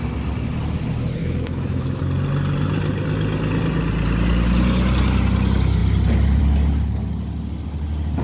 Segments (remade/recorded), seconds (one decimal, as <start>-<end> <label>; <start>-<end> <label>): 0.0-1.2 recorded; 1.2-2.0 remade; 2.0-8.2 recorded